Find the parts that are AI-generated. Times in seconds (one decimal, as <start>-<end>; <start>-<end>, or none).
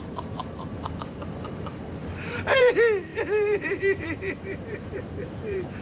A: 2.0-2.7; 3.1-5.8